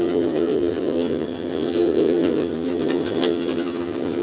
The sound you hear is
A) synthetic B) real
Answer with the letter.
A